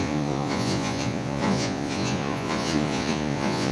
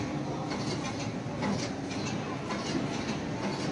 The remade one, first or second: first